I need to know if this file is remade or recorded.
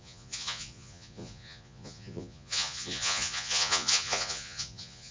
remade